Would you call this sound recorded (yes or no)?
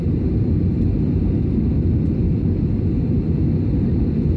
yes